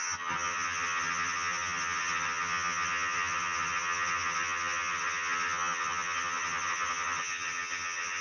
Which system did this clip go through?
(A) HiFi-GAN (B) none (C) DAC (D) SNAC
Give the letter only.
A